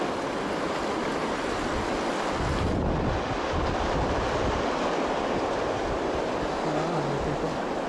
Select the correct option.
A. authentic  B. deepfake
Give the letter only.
A